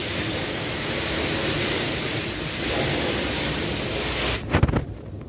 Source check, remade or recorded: recorded